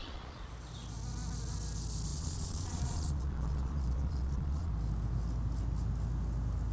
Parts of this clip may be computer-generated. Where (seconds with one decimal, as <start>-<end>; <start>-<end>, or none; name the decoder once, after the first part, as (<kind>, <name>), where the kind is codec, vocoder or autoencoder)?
0.0-0.5 (vocoder, Vocos); 2.1-4.7

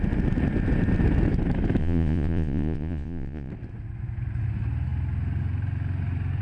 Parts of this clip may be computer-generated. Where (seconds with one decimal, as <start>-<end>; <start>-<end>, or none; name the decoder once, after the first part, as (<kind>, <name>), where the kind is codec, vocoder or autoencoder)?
1.8-3.5 (vocoder, Vocos)